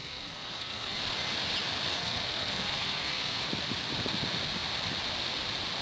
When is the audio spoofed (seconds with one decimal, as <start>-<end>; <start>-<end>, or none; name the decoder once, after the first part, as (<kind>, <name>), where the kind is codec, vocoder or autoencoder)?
0.0-1.0 (codec, SNAC); 1.9-3.4